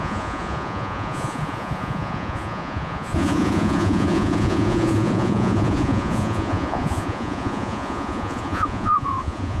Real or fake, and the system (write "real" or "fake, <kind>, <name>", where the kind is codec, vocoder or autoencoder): fake, vocoder, Vocos